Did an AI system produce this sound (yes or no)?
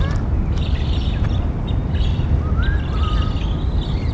yes